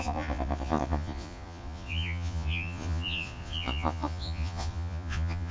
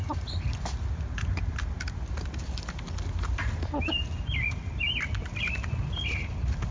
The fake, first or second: first